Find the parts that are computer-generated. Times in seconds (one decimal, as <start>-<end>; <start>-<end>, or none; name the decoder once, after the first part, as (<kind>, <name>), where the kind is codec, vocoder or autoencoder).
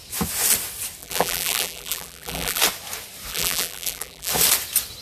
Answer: 1.0-2.6 (vocoder, BigVGAN v2); 3.3-4.3